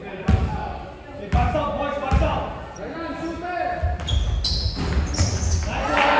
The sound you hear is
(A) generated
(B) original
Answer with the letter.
B